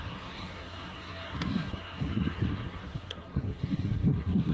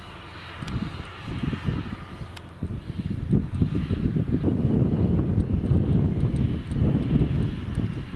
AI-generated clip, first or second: first